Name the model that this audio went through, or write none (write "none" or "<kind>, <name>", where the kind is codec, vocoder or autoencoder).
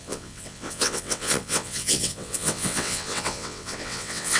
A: vocoder, WaveNeXt